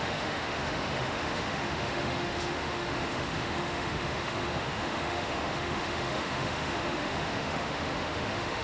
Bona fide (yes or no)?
no